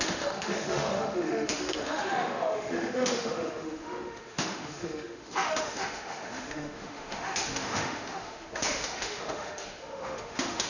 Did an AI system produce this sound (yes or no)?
yes